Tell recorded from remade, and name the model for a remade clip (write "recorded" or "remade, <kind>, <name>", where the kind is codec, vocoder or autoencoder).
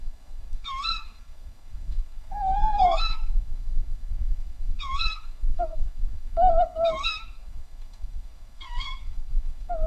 remade, codec, SNAC